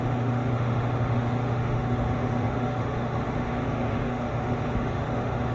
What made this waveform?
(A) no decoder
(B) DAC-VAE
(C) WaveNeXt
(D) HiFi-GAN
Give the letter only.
B